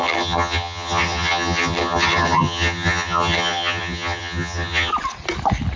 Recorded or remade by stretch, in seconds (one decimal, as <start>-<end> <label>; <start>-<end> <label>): 0.0-4.9 remade; 4.9-5.8 recorded